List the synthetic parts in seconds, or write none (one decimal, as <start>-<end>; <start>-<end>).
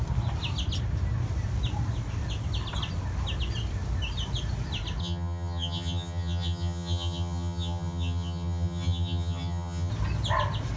5.0-9.9